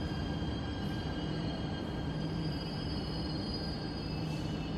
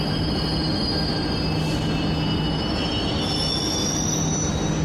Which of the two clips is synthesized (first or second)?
first